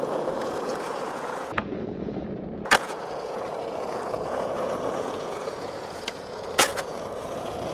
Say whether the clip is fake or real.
fake